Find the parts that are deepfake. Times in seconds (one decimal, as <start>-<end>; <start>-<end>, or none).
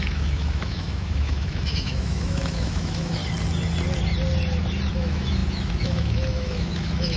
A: 0.0-3.2; 4.9-7.2